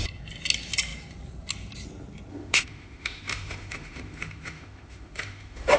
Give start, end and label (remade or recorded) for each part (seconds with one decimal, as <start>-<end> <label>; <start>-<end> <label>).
0.0-2.3 recorded; 2.3-5.8 remade